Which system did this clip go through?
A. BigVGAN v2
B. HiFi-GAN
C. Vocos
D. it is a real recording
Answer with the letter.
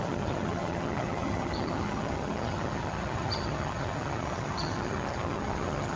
B